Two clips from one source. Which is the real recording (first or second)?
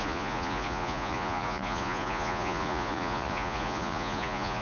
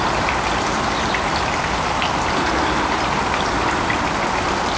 second